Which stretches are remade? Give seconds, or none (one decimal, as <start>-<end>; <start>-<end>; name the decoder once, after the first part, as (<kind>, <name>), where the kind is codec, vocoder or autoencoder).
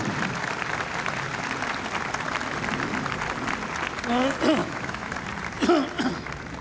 4.6-5.1 (autoencoder, DAC-VAE)